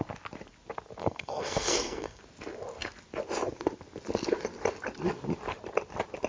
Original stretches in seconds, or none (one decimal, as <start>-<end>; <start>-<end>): 0.0-1.0; 2.2-6.3